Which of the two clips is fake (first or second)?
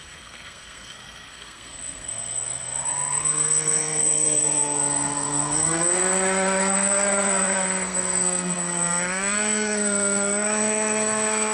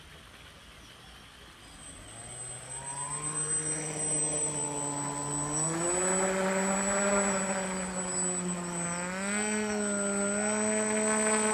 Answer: first